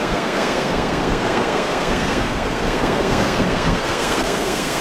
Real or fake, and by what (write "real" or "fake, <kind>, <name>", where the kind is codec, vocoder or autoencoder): fake, codec, SNAC